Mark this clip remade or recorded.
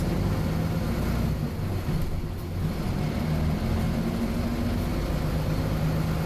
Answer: recorded